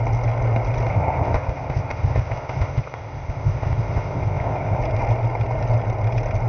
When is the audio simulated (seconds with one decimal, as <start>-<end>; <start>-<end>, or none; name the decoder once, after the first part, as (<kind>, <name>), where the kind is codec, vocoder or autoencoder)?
0.9-4.8 (codec, ZipCodec)